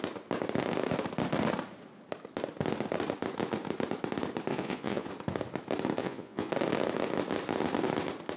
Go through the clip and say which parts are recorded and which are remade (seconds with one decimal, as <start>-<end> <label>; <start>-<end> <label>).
0.0-4.5 recorded; 4.5-5.1 remade; 5.1-6.0 recorded; 6.0-6.5 remade; 6.5-8.4 recorded